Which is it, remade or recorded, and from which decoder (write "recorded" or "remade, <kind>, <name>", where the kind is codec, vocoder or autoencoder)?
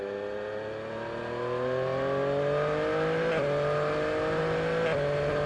recorded